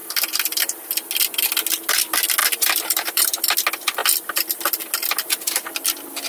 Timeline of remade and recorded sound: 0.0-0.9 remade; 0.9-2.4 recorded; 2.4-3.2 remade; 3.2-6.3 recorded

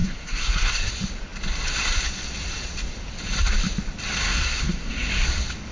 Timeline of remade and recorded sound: 0.0-0.9 remade; 0.9-4.2 recorded; 4.2-5.1 remade; 5.1-5.7 recorded

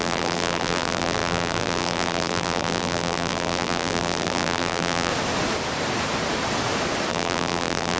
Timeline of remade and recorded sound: 0.0-5.1 remade; 5.1-7.1 recorded; 7.1-8.0 remade

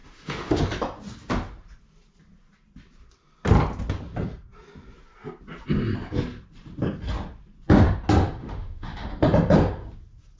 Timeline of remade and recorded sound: 0.0-0.6 remade; 0.6-8.4 recorded; 8.4-9.1 remade; 9.1-10.4 recorded

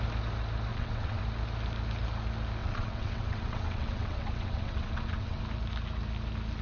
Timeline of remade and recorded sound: 0.0-0.7 recorded; 0.7-1.2 remade; 1.2-2.6 recorded; 2.6-5.4 remade; 5.4-6.6 recorded

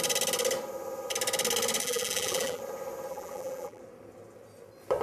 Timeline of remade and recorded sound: 0.0-1.8 recorded; 1.8-2.6 remade; 2.6-3.1 recorded; 3.1-3.8 remade; 3.8-5.0 recorded

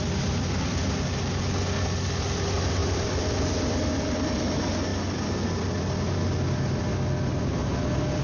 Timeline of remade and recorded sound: 0.0-2.8 recorded; 2.8-3.9 remade; 3.9-8.2 recorded

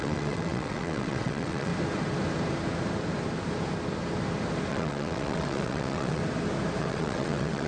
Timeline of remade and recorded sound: 0.0-1.7 remade; 1.7-4.7 recorded; 4.7-6.2 remade; 6.2-6.8 recorded; 6.8-7.7 remade